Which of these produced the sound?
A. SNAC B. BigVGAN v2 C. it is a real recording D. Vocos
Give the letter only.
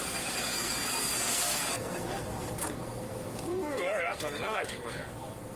A